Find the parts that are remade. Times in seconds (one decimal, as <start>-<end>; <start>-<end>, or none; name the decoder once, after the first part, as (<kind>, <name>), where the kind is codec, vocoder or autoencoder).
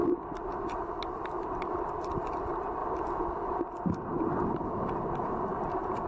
0.0-2.3 (vocoder, BigVGAN v2); 5.5-6.1